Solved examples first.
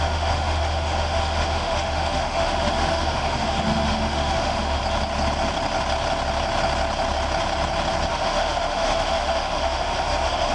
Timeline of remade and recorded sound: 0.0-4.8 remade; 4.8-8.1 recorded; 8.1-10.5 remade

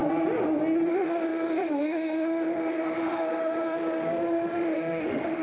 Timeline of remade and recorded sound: 0.0-0.9 recorded; 0.9-5.4 remade

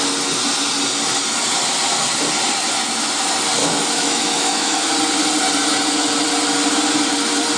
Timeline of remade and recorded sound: 0.0-3.6 recorded; 3.6-4.9 remade; 4.9-7.6 recorded

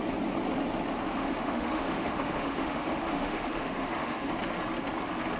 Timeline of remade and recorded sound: 0.0-1.1 recorded; 1.1-4.3 remade; 4.3-5.4 recorded

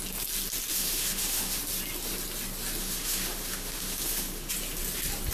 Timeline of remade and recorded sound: 0.0-0.7 recorded; 0.7-1.6 remade; 1.6-2.8 recorded; 2.8-4.5 remade; 4.5-5.3 recorded